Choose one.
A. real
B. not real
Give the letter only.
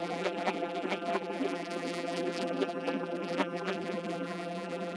B